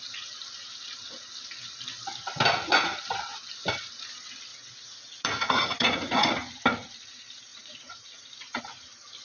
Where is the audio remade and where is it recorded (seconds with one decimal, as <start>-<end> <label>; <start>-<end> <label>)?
0.0-4.5 recorded; 4.5-6.3 remade; 6.3-7.5 recorded; 7.5-8.6 remade; 8.6-9.2 recorded